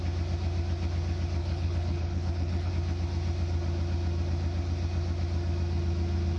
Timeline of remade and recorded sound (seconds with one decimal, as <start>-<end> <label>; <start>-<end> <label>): 0.0-1.4 recorded; 1.4-2.7 remade; 2.7-6.4 recorded